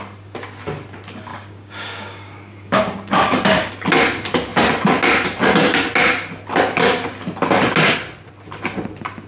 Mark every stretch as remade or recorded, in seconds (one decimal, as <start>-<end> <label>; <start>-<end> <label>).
0.0-1.3 recorded; 1.3-3.7 remade; 3.7-9.3 recorded

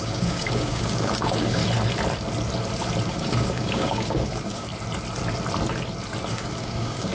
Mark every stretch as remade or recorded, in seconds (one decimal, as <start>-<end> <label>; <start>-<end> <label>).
0.0-1.6 remade; 1.6-3.1 recorded; 3.1-4.7 remade; 4.7-6.3 recorded; 6.3-7.1 remade

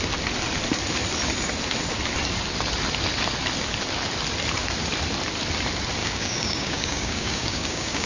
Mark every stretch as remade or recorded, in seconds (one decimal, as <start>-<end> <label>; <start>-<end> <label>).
0.0-6.0 recorded; 6.0-8.1 remade

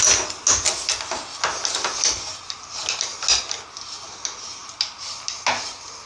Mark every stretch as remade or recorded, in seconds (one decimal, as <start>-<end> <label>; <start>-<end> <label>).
0.0-6.1 recorded